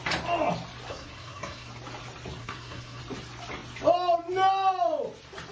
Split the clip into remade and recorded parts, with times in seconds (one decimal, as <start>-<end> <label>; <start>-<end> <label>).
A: 0.0-0.9 recorded; 0.9-1.7 remade; 1.7-2.4 recorded; 2.4-3.0 remade; 3.0-5.5 recorded